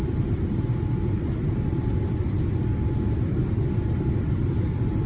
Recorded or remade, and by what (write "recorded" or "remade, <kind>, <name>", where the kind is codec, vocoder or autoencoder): remade, vocoder, BigVGAN v2